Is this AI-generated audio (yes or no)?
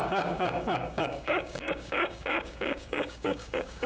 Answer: yes